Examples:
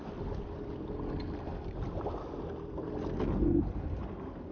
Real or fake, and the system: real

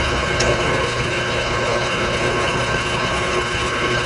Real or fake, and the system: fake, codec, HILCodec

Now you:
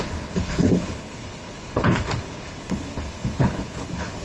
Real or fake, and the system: fake, codec, HILCodec